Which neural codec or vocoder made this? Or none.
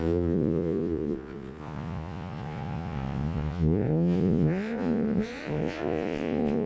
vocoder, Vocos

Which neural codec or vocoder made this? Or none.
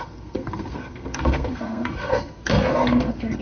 codec, SNAC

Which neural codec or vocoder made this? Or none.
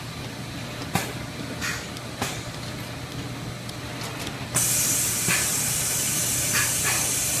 none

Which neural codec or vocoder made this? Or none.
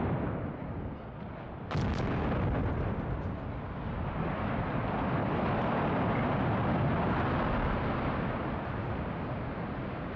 none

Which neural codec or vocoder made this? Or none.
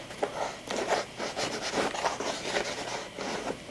none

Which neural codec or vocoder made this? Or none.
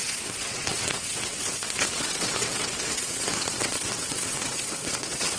vocoder, WaveNeXt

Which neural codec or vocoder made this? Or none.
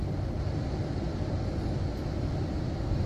none